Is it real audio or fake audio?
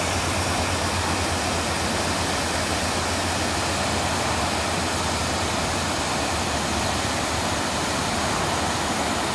real